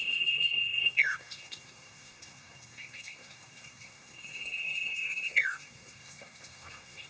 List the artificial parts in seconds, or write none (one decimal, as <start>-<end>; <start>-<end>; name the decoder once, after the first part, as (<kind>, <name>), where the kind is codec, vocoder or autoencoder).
0.0-7.1 (codec, SNAC)

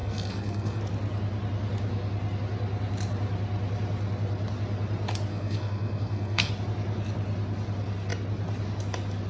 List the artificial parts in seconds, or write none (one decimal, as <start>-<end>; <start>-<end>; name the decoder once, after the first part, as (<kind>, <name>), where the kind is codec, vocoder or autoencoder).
0.0-0.8 (codec, SNAC); 5.3-6.5

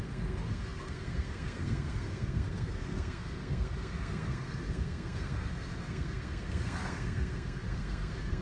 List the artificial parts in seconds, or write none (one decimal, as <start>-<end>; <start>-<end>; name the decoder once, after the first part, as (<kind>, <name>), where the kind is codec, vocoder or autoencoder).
0.0-8.4 (codec, SNAC)

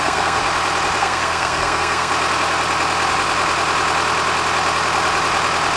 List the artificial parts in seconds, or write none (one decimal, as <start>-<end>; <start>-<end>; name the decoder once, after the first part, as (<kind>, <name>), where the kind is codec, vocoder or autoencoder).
0.0-0.4 (codec, SNAC); 1.0-2.1

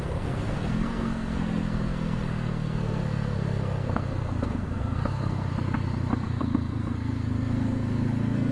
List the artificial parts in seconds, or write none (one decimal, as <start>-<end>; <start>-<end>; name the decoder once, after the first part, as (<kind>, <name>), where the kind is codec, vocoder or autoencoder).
0.0-5.5 (codec, SNAC); 6.2-8.5

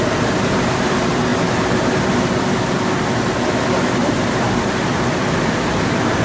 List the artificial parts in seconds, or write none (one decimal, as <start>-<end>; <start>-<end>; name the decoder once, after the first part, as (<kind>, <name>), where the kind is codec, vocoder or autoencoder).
none

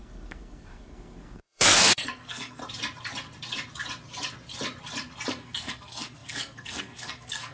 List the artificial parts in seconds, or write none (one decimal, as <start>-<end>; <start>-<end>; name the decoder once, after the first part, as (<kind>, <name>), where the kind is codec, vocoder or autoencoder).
0.0-2.6 (codec, SNAC); 5.3-7.5